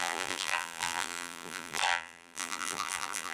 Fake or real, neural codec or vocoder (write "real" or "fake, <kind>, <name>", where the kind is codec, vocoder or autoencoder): fake, vocoder, BigVGAN v2